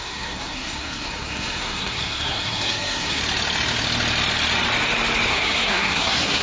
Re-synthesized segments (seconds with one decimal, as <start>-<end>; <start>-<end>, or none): 0.0-3.2; 5.3-6.4